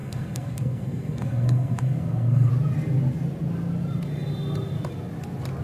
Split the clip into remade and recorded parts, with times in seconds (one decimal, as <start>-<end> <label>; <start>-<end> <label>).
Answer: 0.0-2.5 remade; 2.5-5.6 recorded